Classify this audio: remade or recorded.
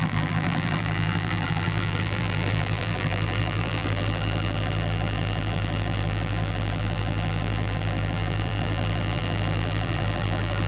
remade